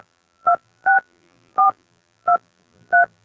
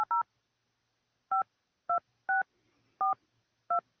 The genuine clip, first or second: second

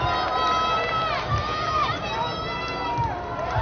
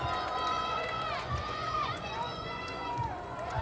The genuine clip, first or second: first